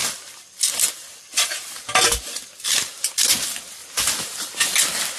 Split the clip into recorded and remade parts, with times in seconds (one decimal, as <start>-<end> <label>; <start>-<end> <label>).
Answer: 0.0-5.2 recorded